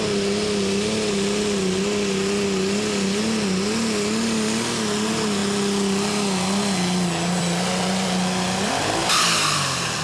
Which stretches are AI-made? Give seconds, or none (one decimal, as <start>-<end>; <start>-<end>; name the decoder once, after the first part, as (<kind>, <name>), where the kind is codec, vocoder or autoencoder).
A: 0.0-5.4 (vocoder, BigVGAN v2); 7.4-10.0